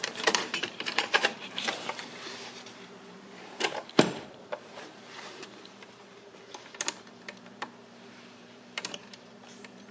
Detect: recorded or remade remade